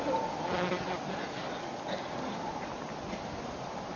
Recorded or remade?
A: recorded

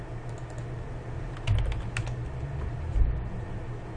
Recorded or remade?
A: recorded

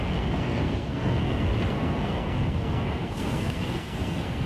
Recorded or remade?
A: remade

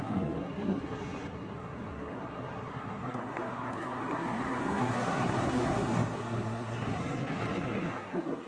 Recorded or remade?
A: remade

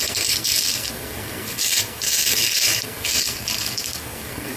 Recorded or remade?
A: remade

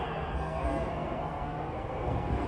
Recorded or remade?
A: remade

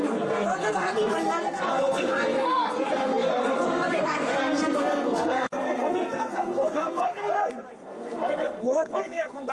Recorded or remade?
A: remade